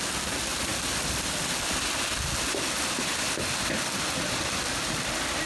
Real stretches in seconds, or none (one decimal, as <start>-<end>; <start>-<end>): 0.0-5.5